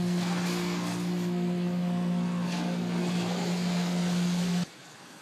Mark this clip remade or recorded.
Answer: remade